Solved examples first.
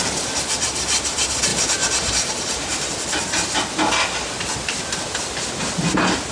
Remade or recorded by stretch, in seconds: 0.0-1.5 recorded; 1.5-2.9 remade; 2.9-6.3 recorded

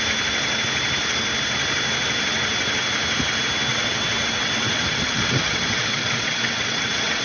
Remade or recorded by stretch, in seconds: 0.0-3.7 recorded; 3.7-7.2 remade

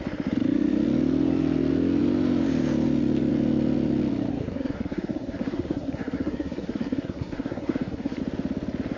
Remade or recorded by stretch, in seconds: 0.0-4.3 recorded; 4.3-8.2 remade; 8.2-9.0 recorded